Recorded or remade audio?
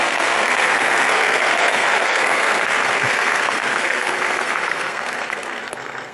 remade